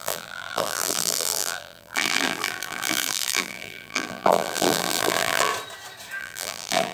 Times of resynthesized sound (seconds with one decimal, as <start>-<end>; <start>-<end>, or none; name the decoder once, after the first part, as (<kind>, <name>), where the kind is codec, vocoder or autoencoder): 0.0-5.5 (vocoder, BigVGAN v2); 6.2-6.9

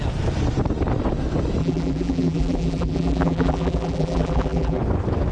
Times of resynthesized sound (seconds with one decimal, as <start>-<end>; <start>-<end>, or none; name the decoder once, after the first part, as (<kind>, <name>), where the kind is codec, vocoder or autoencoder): 1.6-4.8 (vocoder, BigVGAN v2)

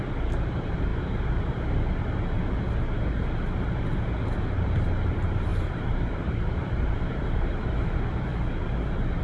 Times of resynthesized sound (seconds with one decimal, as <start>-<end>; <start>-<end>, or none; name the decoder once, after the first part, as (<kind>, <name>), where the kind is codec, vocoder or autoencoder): 0.0-0.9 (vocoder, BigVGAN v2); 5.1-8.3

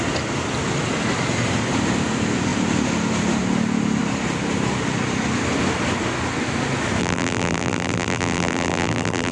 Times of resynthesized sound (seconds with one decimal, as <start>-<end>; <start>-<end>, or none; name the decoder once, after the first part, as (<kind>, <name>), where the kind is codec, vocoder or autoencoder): 7.0-9.3 (vocoder, BigVGAN v2)

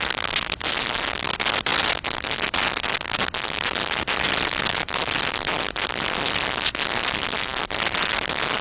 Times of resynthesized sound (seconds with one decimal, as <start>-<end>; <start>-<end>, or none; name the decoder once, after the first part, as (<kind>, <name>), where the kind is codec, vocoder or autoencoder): none

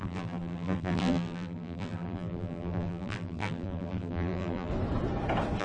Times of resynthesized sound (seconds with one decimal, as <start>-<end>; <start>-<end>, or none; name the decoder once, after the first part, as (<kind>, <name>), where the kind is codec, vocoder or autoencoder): 0.0-4.7 (vocoder, BigVGAN v2)

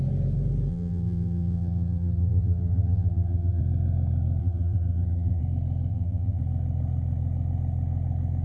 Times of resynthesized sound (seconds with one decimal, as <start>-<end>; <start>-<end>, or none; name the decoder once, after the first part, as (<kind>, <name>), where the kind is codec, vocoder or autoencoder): 0.7-3.6 (vocoder, BigVGAN v2); 4.4-5.4; 5.9-6.4